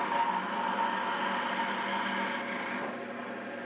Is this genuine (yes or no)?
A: yes